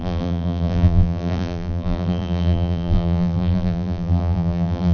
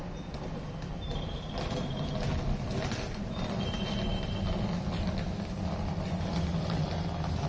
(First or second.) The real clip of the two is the second